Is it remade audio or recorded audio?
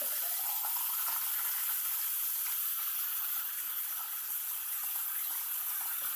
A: recorded